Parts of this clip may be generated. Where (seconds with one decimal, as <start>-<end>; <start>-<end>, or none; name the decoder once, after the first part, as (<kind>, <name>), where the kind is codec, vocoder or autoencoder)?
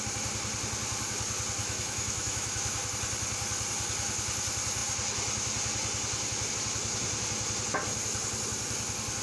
1.6-2.9 (autoencoder, DAC-VAE)